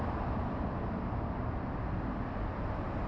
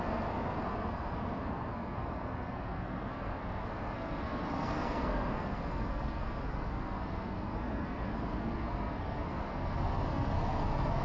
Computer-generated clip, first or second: second